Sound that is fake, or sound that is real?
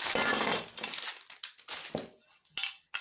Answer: real